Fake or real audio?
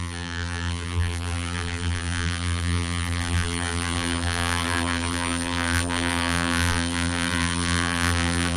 fake